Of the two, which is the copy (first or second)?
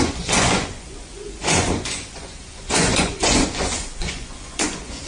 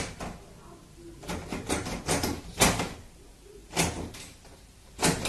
first